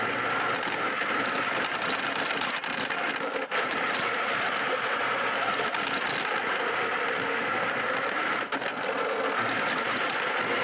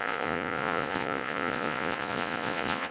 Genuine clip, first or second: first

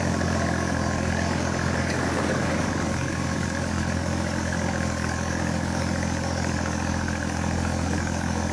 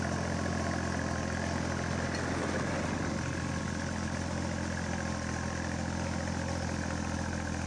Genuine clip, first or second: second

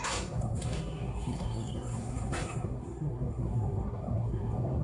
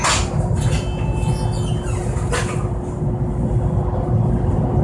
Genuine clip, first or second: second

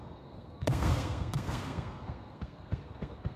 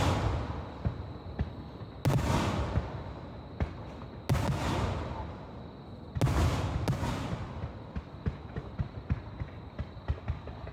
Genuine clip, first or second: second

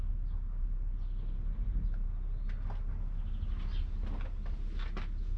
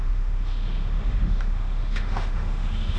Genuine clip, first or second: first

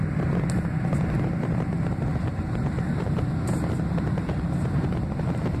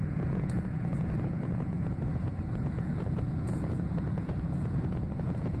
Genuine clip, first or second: first